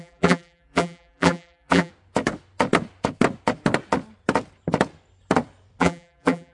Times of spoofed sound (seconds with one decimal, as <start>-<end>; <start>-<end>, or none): 0.0-1.9; 5.8-6.5